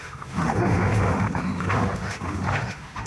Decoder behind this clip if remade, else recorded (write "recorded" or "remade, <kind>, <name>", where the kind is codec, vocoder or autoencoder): remade, autoencoder, DAC-VAE